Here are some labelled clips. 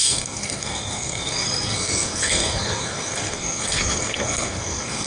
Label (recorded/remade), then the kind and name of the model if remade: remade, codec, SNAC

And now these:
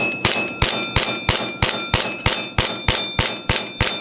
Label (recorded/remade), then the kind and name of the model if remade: recorded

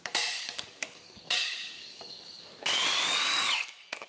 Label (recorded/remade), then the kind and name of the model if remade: remade, codec, DAC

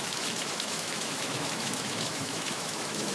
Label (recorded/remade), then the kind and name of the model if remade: remade, autoencoder, DAC-VAE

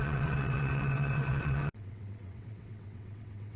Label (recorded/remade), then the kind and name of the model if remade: remade, vocoder, WaveNeXt